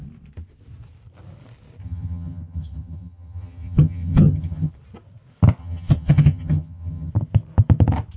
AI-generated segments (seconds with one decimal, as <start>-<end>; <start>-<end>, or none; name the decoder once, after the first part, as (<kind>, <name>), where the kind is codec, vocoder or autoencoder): 1.8-4.7 (vocoder, HiFi-GAN); 5.6-7.1